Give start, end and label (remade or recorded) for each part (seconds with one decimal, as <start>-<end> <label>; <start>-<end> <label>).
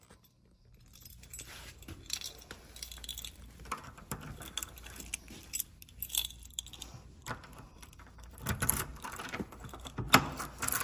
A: 0.0-7.2 recorded; 7.2-8.1 remade; 8.1-8.9 recorded; 8.9-10.2 remade; 10.2-10.8 recorded